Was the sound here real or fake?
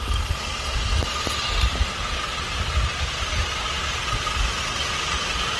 real